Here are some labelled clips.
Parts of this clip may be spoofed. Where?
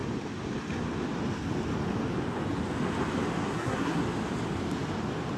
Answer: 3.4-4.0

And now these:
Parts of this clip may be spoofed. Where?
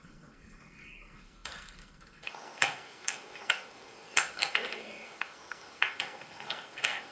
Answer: 0.0-7.1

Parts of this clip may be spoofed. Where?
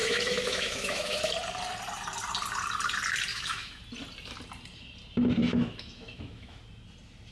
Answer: 0.0-1.3; 3.3-3.8; 5.4-6.6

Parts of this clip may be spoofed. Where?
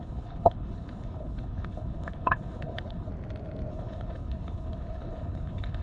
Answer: 0.0-3.1; 3.7-5.8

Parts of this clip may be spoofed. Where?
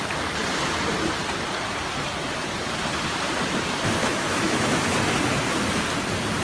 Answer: 4.0-4.9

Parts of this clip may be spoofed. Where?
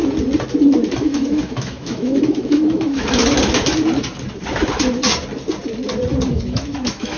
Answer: 0.9-3.2; 6.3-7.2